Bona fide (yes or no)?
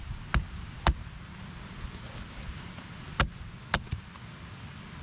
yes